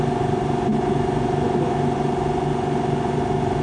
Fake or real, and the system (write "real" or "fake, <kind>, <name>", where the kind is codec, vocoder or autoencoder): real